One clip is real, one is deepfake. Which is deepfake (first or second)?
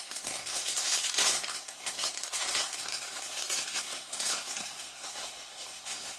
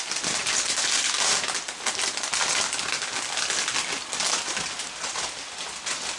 first